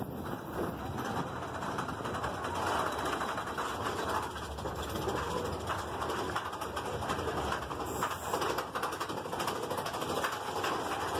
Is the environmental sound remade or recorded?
recorded